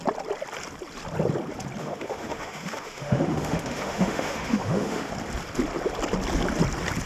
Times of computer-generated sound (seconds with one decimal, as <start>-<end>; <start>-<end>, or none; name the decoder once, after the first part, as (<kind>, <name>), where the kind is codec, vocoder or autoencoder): 1.8-5.1 (autoencoder, DAC-VAE)